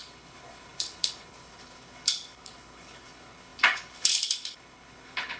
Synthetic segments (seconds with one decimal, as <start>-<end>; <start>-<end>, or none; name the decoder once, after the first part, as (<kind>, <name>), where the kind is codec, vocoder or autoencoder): 0.0-5.4 (codec, HILCodec)